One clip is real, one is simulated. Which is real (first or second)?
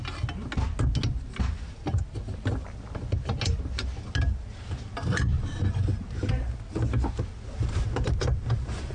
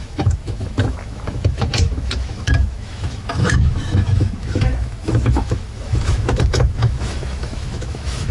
first